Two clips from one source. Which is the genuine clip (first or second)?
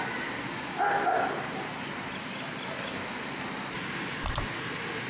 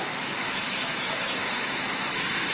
first